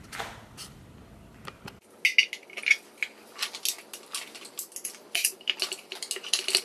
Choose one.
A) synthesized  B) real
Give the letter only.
B